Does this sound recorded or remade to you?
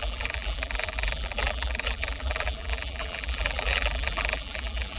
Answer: remade